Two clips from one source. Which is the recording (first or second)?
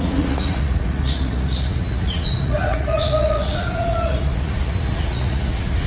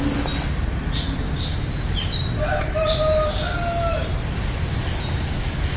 second